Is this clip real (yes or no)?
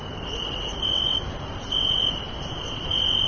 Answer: yes